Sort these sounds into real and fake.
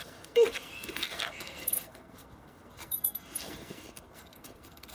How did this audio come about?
fake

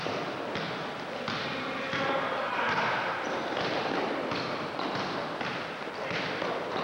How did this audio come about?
real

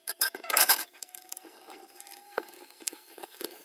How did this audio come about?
fake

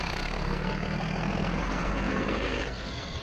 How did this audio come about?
fake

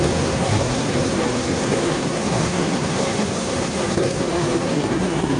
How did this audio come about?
fake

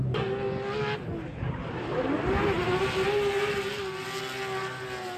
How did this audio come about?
real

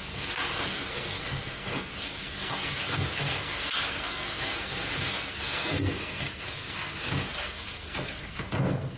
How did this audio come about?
fake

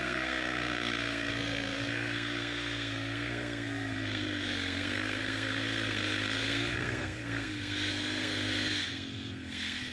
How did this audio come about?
fake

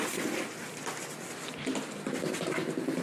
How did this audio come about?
real